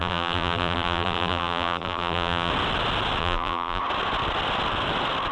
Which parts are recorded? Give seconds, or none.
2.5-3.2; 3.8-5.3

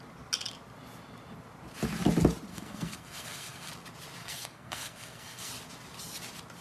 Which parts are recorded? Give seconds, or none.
0.0-2.5; 3.7-4.2; 5.5-6.6

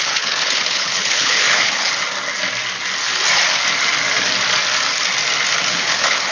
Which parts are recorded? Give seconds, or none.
1.9-5.7

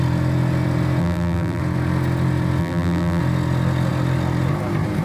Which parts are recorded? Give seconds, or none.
0.0-1.0; 1.6-2.6; 3.2-5.0

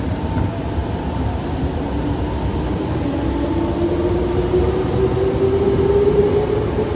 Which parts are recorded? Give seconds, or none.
0.0-7.0

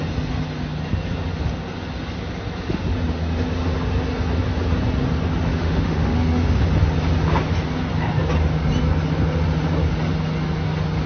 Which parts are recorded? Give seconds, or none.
0.0-5.5; 6.6-11.1